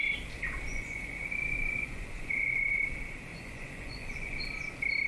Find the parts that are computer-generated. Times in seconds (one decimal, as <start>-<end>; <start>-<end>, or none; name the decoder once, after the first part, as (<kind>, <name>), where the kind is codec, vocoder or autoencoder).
0.7-2.8 (vocoder, Vocos); 3.3-4.4